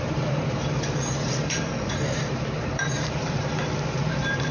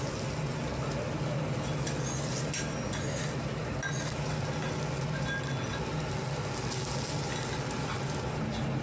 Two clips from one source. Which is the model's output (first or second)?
first